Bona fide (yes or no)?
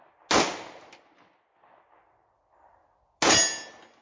yes